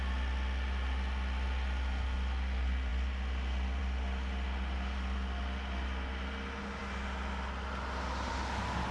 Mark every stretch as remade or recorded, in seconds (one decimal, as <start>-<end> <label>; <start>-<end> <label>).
0.0-8.9 recorded